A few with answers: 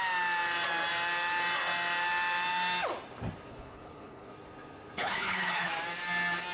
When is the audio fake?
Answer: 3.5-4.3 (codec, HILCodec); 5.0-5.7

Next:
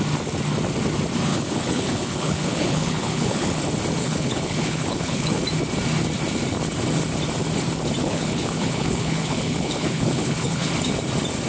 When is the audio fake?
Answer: 1.3-3.6 (codec, HILCodec); 4.0-5.4; 8.0-10.7

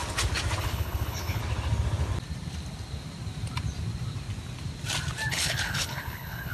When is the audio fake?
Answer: 0.6-1.4 (codec, HILCodec); 5.3-6.5

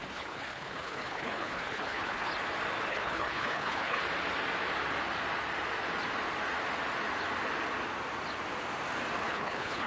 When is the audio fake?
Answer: 0.0-2.3 (codec, HILCodec); 2.9-4.0; 9.2-9.9

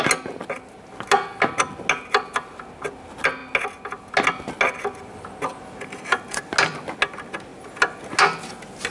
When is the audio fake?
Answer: none

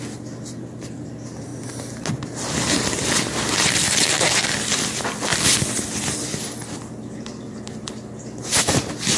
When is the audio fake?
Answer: none